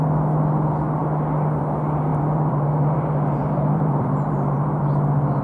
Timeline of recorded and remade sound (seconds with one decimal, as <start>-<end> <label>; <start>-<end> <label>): 0.0-2.1 recorded; 2.1-4.8 remade; 4.8-5.4 recorded